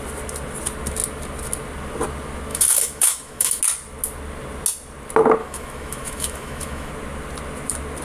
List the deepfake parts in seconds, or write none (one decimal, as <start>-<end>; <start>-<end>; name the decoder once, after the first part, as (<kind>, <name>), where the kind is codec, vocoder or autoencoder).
2.5-3.6 (autoencoder, DAC-VAE); 5.4-6.9